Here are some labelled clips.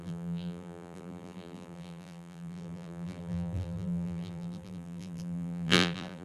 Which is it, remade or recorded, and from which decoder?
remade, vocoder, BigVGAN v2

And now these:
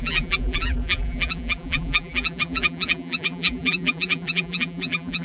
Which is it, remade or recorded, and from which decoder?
remade, vocoder, BigVGAN v2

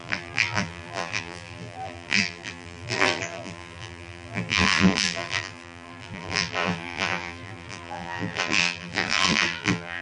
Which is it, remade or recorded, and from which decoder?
remade, vocoder, BigVGAN v2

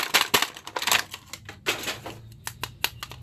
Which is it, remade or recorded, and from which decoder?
recorded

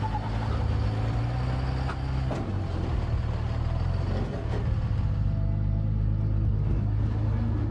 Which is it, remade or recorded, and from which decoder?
recorded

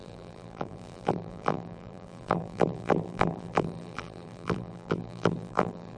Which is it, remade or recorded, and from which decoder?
remade, vocoder, BigVGAN v2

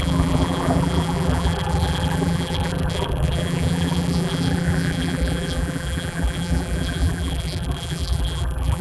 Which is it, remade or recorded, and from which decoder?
remade, vocoder, BigVGAN v2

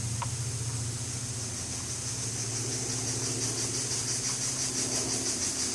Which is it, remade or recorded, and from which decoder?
recorded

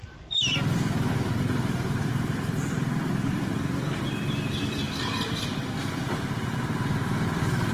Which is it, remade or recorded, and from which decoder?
remade, vocoder, BigVGAN v2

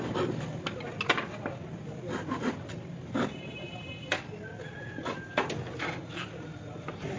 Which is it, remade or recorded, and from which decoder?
recorded